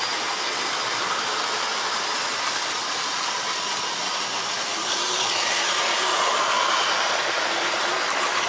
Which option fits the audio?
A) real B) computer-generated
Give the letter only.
A